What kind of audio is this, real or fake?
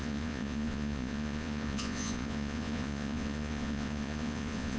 fake